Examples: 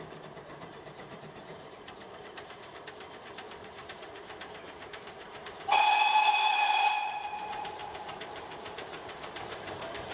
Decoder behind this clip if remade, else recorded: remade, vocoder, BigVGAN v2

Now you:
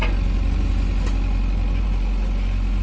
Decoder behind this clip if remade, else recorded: recorded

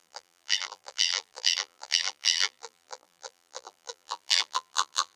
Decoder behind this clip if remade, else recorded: remade, vocoder, BigVGAN v2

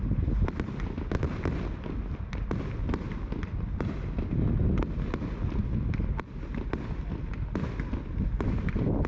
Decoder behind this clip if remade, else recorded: recorded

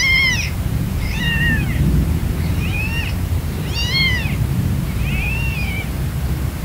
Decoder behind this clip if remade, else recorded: remade, vocoder, BigVGAN v2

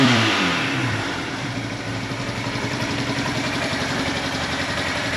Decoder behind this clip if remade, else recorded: remade, vocoder, BigVGAN v2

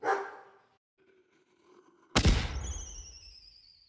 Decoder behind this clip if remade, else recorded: recorded